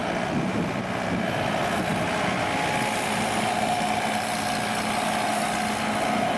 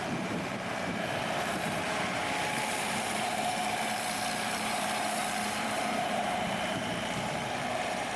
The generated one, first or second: second